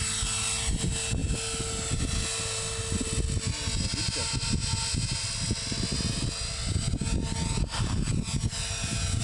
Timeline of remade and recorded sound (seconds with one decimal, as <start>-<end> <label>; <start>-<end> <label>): 0.0-9.2 recorded